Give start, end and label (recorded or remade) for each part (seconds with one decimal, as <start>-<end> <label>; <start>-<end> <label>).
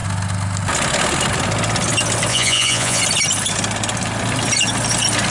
0.0-2.3 recorded; 2.3-3.0 remade; 3.0-5.3 recorded